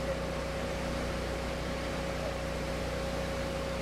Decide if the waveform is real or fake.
real